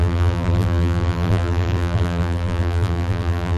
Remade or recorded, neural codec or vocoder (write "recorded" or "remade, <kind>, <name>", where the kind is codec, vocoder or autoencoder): remade, vocoder, BigVGAN v2